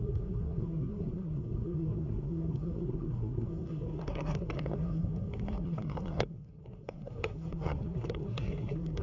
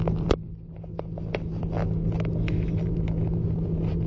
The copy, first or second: first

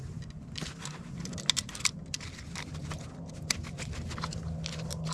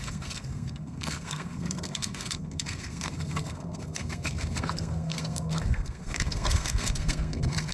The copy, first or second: second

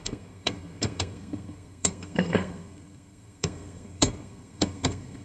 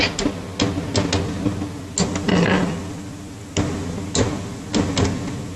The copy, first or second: first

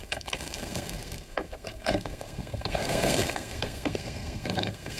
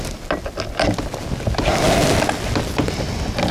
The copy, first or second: first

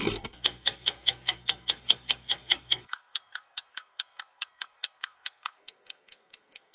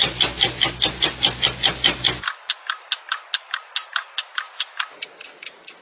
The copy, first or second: first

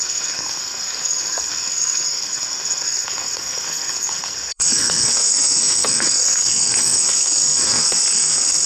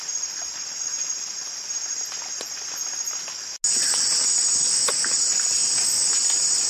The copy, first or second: first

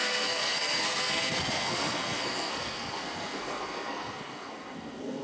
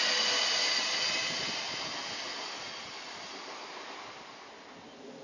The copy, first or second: first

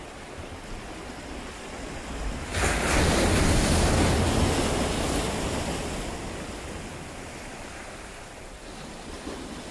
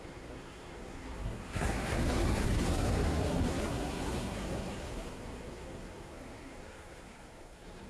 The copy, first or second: second